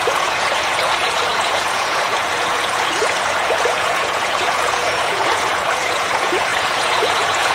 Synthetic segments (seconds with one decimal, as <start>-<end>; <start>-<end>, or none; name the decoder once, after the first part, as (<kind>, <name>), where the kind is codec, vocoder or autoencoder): 0.0-7.5 (vocoder, Vocos)

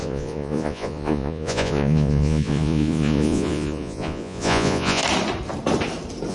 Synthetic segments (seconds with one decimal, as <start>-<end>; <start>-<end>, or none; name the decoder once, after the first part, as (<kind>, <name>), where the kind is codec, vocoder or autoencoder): 0.0-5.0 (vocoder, Vocos)

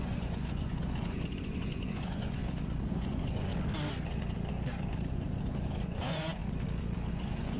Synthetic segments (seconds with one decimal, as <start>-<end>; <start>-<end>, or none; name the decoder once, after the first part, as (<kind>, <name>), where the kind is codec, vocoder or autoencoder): 0.0-2.4 (vocoder, Vocos); 2.9-3.5; 5.1-6.4; 7.1-7.6

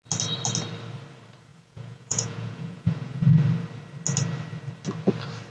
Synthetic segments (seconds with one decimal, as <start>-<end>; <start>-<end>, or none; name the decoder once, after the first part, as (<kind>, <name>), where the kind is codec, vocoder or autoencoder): 1.5-3.2 (vocoder, Vocos)

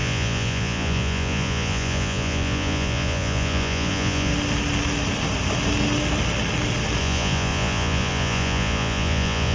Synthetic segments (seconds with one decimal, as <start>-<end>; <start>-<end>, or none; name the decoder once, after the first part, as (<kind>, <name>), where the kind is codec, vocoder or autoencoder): 0.0-4.3 (vocoder, Vocos); 7.0-9.5

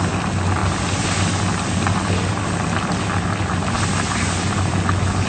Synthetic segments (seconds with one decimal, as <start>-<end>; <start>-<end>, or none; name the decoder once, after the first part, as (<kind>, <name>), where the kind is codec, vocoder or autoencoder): none

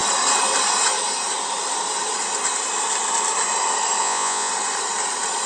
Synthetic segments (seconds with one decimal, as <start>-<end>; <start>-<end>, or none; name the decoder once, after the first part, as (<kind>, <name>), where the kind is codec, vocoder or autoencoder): 4.0-4.5 (vocoder, Vocos)